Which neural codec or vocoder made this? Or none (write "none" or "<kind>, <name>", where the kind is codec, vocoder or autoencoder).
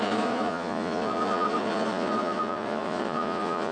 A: vocoder, Vocos